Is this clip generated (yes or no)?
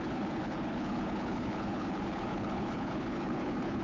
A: yes